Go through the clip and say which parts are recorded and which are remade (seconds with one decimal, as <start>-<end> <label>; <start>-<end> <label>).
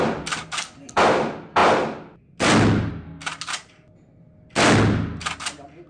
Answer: 0.0-5.9 recorded